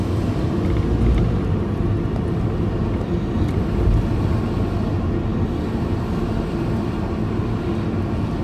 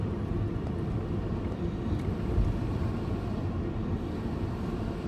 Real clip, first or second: first